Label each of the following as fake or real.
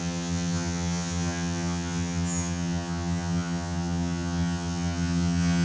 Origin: fake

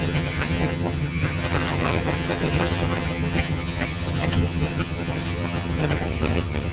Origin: fake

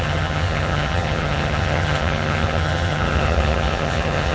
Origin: fake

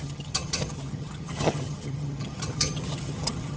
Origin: fake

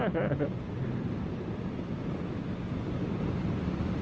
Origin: real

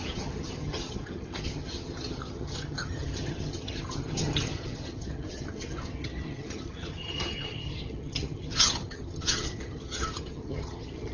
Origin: fake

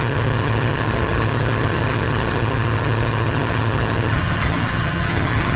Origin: fake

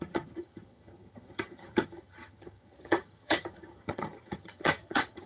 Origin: fake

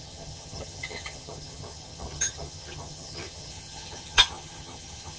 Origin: fake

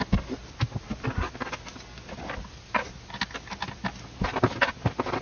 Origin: real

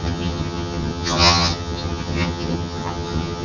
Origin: fake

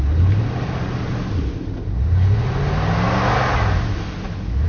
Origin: real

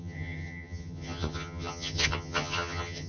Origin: fake